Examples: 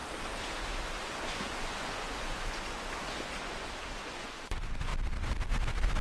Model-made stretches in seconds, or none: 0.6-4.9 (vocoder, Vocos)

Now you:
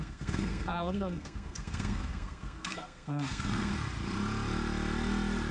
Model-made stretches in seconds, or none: 0.0-3.7 (codec, SNAC)

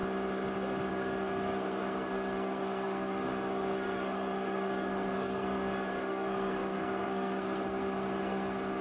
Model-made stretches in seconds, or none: 0.9-8.8 (codec, SNAC)

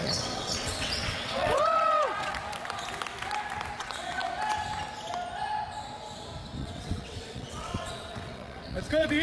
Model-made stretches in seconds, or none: 0.0-2.4 (vocoder, WaveNeXt); 3.8-4.2; 6.6-9.2